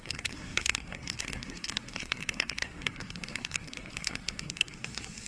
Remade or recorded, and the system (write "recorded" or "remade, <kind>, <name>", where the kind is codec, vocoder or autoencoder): remade, codec, SNAC